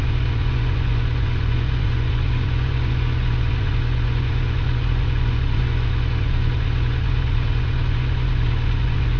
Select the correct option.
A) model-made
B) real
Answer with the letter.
A